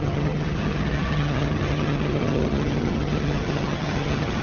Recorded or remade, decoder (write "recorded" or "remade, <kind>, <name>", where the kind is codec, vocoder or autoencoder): remade, vocoder, HiFi-GAN